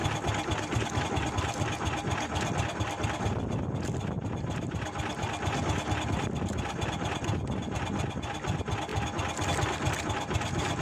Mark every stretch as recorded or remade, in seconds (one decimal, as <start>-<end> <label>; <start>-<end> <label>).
0.0-10.8 recorded